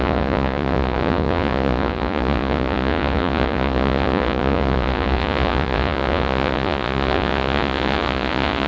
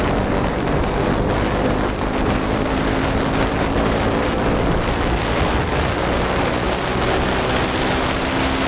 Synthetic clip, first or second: first